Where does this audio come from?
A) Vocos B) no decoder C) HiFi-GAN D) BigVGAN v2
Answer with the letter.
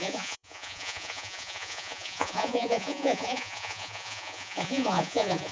A